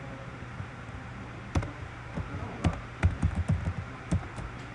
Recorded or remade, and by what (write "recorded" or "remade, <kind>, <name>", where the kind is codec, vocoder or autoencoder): remade, vocoder, BigVGAN v2